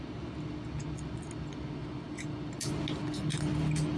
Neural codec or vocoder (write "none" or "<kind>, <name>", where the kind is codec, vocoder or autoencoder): none